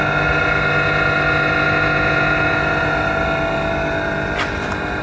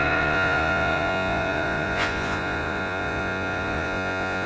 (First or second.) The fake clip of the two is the second